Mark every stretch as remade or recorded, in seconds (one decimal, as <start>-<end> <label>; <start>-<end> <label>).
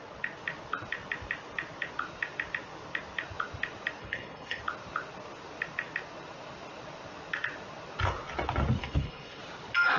0.0-4.0 recorded; 4.0-4.6 remade; 4.6-8.8 recorded; 8.8-9.4 remade; 9.4-10.0 recorded